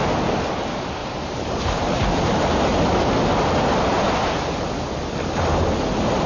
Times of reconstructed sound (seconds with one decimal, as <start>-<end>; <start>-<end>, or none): none

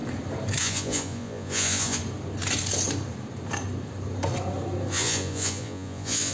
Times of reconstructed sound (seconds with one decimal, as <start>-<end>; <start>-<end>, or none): 0.6-2.0; 4.9-6.3

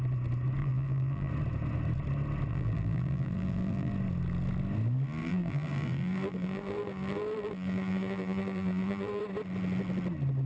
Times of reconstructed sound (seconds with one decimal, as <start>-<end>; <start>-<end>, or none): 0.6-1.3; 2.5-3.9; 5.2-9.2

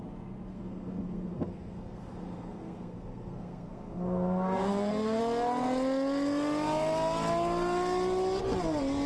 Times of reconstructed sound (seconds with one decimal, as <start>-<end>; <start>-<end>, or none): 0.5-5.2

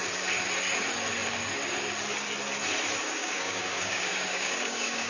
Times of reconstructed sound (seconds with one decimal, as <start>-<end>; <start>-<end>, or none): 3.2-5.1

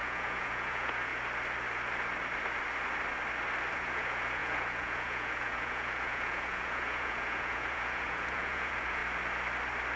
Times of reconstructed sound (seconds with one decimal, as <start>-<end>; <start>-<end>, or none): 0.0-1.1; 3.7-9.0

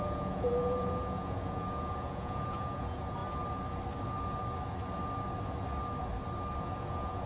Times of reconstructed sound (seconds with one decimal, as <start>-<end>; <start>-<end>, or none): 0.0-3.2; 6.6-7.3

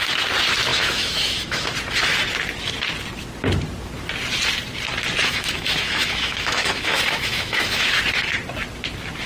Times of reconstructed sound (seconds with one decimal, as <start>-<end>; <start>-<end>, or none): 0.7-1.7; 5.2-8.0